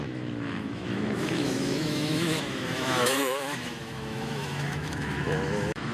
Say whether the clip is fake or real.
fake